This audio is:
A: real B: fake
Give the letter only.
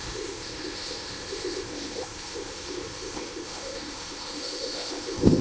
B